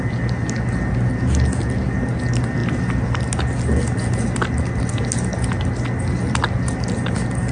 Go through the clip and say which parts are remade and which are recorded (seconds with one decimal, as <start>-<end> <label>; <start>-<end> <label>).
0.0-7.5 recorded